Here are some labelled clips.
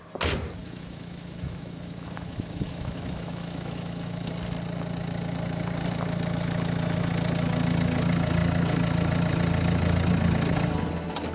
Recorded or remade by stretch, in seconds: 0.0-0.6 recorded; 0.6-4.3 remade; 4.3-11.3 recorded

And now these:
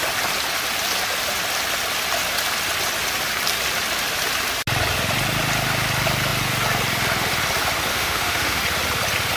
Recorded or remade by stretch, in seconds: 0.0-7.9 recorded; 7.9-8.6 remade; 8.6-9.4 recorded

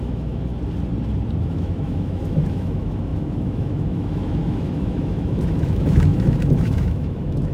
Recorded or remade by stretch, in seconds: 0.0-0.5 remade; 0.5-1.4 recorded; 1.4-7.5 remade

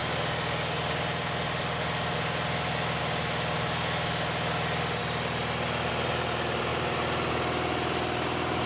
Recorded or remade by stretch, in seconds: 0.0-8.7 recorded

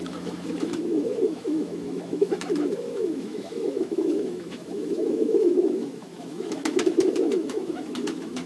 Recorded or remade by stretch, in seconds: 0.0-8.5 remade

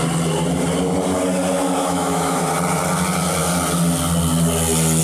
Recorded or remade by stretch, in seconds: 0.0-1.8 recorded; 1.8-2.4 remade; 2.4-5.0 recorded